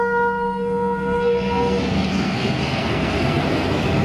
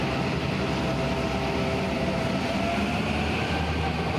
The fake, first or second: first